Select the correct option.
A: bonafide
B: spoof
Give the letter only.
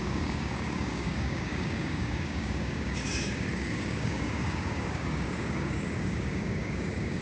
B